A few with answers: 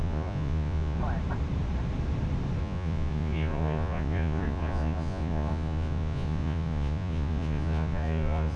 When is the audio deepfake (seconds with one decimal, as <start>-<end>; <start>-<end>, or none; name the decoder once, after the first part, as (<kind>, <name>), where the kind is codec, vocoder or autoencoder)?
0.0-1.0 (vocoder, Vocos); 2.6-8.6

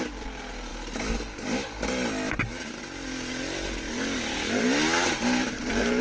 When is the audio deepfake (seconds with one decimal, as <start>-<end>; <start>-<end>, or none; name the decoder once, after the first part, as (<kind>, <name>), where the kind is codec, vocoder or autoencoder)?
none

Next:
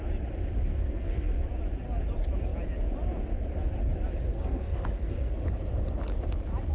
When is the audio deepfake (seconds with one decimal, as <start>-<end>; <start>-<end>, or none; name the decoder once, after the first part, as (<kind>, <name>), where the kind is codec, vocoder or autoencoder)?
0.7-1.4 (codec, SNAC); 4.3-5.3

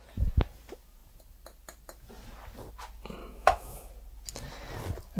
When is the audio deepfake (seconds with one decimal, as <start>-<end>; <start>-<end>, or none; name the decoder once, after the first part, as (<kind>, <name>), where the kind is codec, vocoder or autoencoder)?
3.2-3.9 (autoencoder, DAC-VAE)

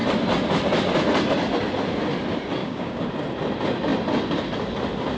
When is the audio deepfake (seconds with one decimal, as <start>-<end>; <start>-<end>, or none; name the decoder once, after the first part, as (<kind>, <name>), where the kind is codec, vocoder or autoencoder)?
2.6-3.1 (codec, DAC)